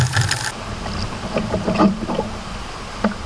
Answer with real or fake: real